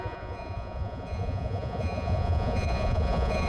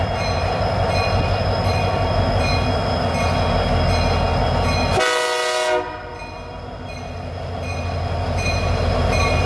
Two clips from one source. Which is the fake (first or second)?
first